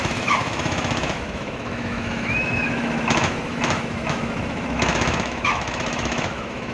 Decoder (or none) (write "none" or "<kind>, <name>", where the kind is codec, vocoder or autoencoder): autoencoder, DAC-VAE